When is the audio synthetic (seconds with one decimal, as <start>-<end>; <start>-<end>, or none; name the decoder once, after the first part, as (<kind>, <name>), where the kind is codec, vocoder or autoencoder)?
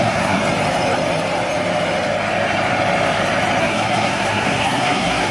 0.0-0.4 (codec, SNAC); 3.6-5.3